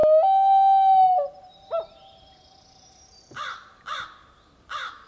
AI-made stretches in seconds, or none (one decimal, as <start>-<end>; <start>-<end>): none